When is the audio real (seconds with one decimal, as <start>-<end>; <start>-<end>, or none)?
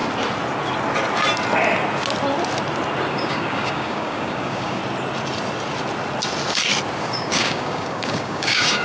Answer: 0.0-3.1; 4.8-7.0